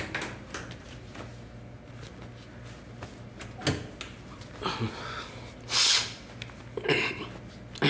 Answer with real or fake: real